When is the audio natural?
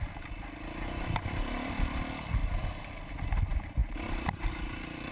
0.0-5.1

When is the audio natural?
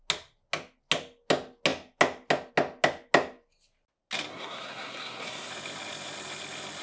0.0-4.3; 5.5-6.8